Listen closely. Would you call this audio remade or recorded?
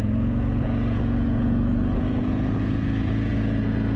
remade